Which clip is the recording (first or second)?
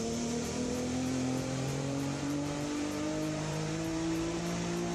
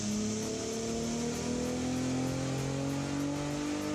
second